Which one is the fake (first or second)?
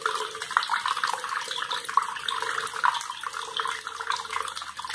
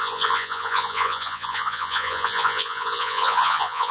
second